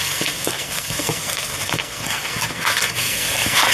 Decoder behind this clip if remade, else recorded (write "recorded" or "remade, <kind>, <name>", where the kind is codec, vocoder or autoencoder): remade, codec, SNAC